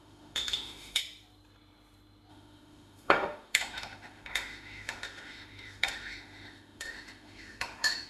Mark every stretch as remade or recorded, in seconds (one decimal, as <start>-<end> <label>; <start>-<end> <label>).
0.0-1.0 remade; 1.0-2.3 recorded; 2.3-8.1 remade